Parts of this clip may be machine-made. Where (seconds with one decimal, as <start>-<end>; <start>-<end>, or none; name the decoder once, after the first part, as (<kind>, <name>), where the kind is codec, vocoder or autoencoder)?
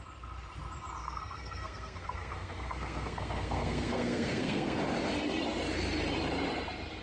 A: 1.0-4.8 (codec, SNAC)